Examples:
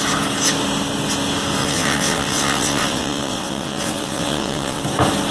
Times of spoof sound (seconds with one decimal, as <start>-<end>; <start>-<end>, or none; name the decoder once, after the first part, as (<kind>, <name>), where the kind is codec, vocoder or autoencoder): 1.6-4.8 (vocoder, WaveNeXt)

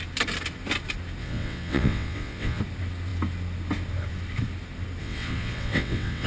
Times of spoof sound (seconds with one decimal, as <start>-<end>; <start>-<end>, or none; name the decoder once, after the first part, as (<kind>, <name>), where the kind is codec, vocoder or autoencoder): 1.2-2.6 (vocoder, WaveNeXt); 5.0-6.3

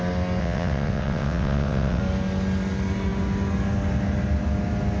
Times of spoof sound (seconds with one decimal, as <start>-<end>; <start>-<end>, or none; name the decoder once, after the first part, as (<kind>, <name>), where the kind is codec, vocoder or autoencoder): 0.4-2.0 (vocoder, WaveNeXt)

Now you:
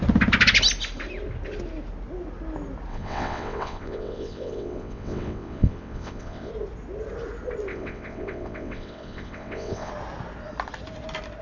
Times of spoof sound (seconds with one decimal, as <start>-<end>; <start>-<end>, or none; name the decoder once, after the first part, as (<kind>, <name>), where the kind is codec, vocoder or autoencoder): 2.9-6.5 (vocoder, WaveNeXt); 7.7-9.9

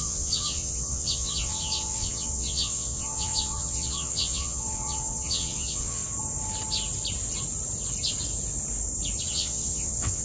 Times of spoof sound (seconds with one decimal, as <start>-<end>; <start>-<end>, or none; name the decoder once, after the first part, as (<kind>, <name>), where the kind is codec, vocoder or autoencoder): 0.0-6.0 (vocoder, WaveNeXt); 9.3-10.2

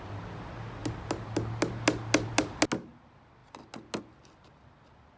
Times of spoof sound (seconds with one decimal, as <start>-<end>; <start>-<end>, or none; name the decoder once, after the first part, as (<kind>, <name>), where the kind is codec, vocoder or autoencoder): none

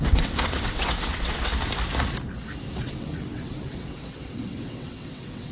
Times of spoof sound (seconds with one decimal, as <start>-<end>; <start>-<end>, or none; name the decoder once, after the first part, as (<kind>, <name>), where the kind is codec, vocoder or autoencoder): 0.0-1.5 (vocoder, WaveNeXt); 2.8-5.5